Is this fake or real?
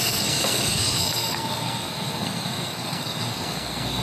fake